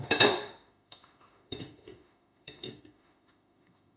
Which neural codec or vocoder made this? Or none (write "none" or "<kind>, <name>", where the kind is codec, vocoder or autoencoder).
autoencoder, DAC-VAE